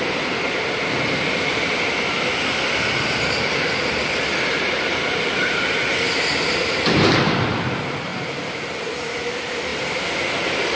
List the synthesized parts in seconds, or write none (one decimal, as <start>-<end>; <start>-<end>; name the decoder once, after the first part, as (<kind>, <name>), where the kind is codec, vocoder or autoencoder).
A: 8.1-8.9 (vocoder, BigVGAN v2)